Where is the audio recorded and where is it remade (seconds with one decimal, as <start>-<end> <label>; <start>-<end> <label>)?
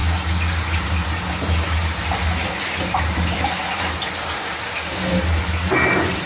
0.0-6.3 recorded